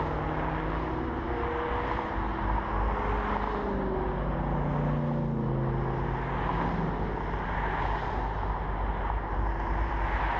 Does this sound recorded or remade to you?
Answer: recorded